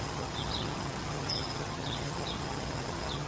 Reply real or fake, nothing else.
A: fake